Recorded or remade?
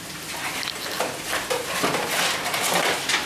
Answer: recorded